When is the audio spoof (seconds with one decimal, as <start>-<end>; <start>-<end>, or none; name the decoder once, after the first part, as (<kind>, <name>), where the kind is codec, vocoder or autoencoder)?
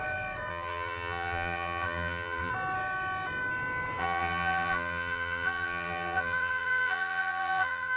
0.5-2.5 (vocoder, BigVGAN v2); 4.0-8.0